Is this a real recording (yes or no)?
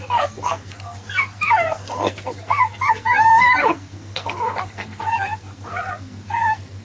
no